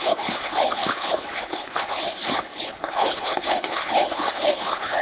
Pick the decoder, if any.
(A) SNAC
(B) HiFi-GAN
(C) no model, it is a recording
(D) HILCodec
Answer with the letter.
D